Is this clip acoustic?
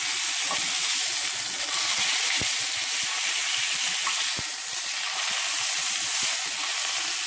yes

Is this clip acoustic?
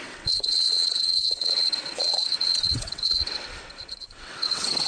no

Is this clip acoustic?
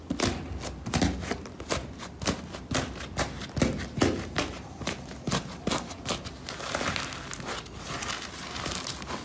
yes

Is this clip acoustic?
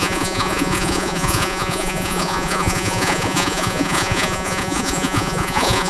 no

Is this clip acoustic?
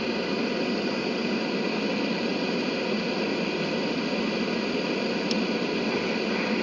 yes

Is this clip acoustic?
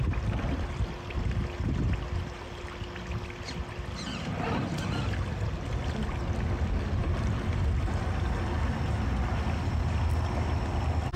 yes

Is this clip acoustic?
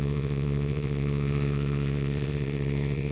no